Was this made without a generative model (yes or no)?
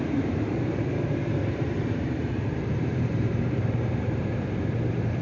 no